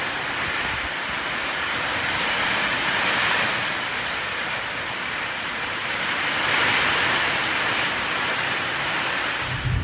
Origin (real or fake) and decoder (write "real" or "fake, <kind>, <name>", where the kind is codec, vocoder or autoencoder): real